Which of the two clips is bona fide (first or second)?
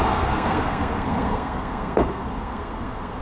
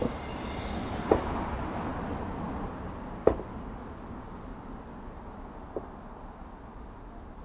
second